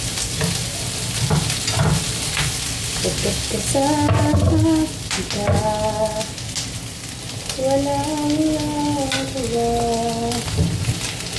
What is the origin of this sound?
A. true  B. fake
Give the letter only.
A